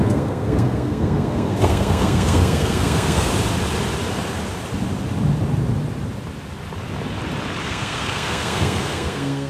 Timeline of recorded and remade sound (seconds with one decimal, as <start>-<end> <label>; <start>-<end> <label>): 0.0-3.3 remade; 3.3-7.6 recorded; 7.6-9.5 remade